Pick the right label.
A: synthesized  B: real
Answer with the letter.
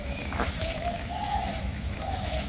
A